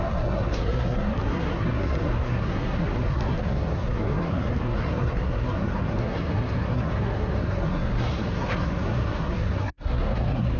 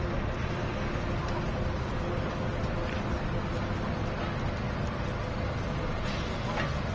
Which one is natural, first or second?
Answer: second